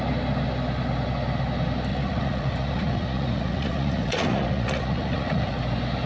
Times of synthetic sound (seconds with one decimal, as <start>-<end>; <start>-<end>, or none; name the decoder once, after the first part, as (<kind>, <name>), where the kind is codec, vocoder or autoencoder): 1.9-5.6 (vocoder, Vocos)